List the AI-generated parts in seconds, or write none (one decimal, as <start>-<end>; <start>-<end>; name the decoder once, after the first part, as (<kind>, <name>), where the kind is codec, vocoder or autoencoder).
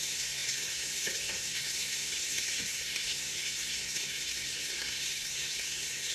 0.0-6.1 (codec, SNAC)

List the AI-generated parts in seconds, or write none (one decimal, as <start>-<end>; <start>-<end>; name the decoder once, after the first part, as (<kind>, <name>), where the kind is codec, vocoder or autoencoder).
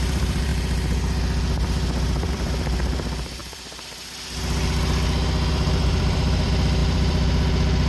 0.0-0.5 (vocoder, BigVGAN v2); 2.3-3.4; 5.5-7.9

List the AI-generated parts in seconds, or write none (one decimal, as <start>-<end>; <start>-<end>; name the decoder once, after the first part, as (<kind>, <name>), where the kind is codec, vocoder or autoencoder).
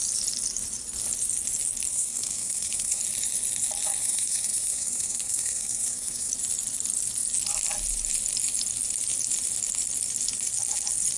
1.9-3.0 (codec, SNAC); 4.0-6.3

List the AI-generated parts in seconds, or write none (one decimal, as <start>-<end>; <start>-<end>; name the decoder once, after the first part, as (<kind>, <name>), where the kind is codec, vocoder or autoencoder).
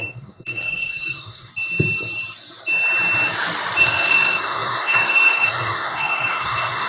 0.0-1.5 (codec, SNAC); 3.8-6.9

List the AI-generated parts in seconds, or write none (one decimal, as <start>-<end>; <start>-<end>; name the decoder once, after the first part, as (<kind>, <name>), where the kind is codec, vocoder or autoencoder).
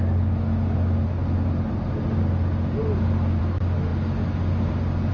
none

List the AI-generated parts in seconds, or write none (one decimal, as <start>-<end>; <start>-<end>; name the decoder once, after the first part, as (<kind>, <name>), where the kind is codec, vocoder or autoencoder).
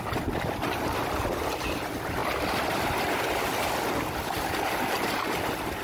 2.2-5.2 (vocoder, BigVGAN v2)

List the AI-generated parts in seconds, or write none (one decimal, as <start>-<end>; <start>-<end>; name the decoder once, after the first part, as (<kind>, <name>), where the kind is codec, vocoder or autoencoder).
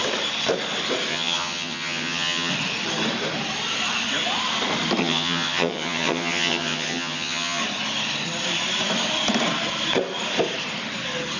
1.1-2.5 (vocoder, HiFi-GAN); 5.0-7.6